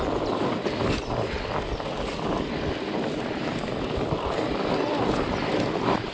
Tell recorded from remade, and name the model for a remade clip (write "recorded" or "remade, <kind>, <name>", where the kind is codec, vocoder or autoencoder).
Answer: recorded